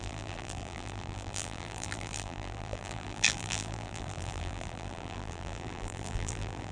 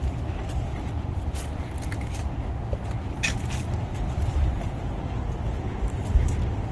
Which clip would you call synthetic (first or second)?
first